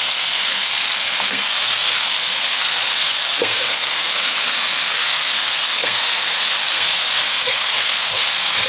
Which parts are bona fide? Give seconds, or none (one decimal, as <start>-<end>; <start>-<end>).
none